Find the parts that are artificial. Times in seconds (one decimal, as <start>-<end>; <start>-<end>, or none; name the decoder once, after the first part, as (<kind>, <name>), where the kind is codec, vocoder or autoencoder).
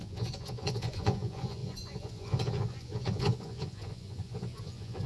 0.0-5.1 (vocoder, Vocos)